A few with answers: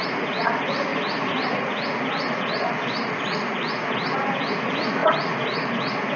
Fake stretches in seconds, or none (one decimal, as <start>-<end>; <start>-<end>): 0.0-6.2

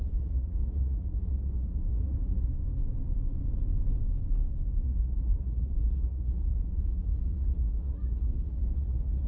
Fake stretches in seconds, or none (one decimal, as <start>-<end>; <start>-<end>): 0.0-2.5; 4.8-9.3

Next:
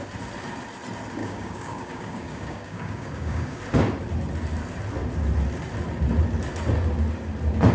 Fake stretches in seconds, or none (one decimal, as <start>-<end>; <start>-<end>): 1.2-3.6

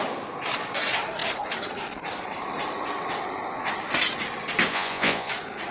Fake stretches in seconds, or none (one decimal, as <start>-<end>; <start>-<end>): 4.7-5.3